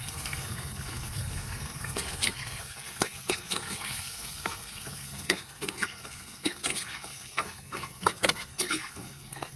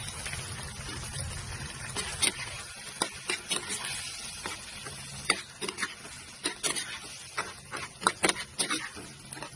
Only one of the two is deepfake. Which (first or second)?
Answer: first